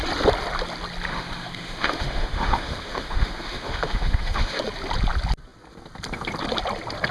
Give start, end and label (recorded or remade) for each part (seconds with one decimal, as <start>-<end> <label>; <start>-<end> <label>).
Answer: 0.0-1.1 recorded; 1.1-4.6 remade; 4.6-7.1 recorded